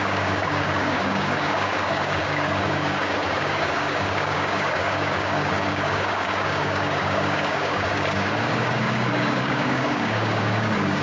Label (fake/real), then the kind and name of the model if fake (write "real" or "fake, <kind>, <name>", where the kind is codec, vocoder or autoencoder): fake, codec, DAC